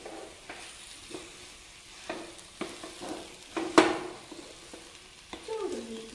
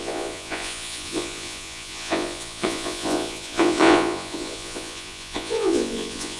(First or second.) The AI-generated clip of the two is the second